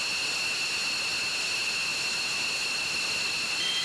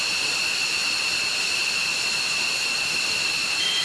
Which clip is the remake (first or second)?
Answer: second